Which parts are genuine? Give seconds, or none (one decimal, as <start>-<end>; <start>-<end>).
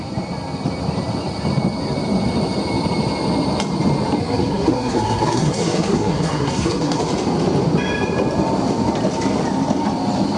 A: 0.0-4.2; 7.0-10.4